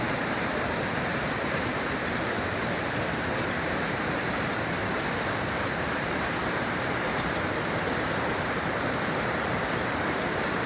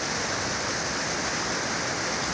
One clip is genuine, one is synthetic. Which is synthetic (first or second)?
first